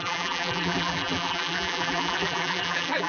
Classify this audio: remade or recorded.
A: remade